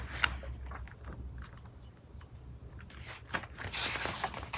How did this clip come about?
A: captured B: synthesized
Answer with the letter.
A